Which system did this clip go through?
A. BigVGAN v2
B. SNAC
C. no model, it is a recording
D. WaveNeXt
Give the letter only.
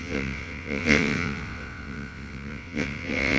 D